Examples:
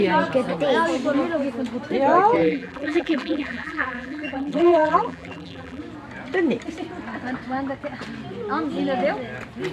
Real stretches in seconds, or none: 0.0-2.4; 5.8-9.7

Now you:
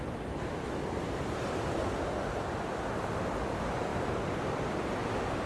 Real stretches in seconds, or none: 0.0-5.5